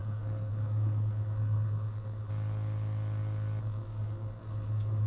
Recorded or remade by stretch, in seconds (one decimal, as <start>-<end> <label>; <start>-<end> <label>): 0.0-2.3 remade; 2.3-3.6 recorded; 3.6-5.1 remade